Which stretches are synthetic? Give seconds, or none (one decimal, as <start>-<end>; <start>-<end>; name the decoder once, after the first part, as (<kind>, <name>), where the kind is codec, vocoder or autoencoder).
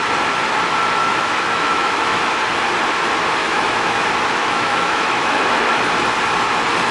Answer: 1.1-2.3 (autoencoder, DAC-VAE); 3.4-4.0; 4.4-5.8